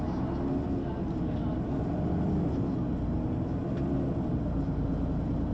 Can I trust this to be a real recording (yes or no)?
yes